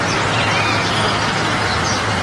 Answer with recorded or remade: recorded